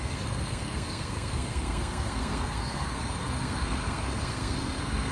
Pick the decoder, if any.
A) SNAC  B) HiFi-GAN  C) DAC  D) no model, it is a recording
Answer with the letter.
A